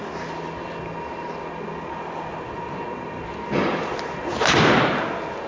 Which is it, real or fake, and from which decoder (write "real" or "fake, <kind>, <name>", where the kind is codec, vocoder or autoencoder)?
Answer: real